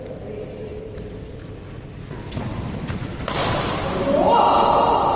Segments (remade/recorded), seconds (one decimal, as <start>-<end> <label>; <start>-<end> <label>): 0.0-0.7 recorded; 0.7-1.8 remade; 1.8-5.2 recorded